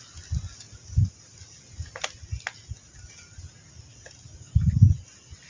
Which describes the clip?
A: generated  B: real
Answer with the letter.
B